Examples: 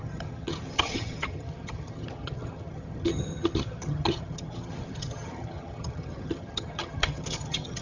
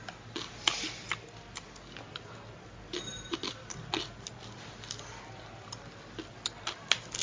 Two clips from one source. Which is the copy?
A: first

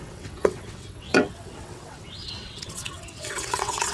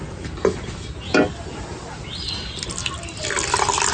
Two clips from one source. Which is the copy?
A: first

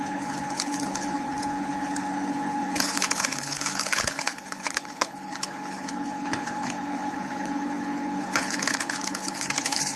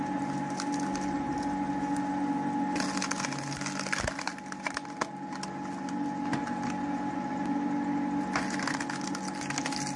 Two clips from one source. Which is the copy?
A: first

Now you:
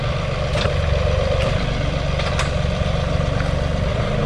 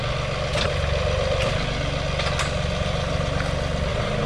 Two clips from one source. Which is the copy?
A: first